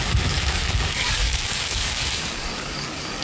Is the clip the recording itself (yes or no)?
no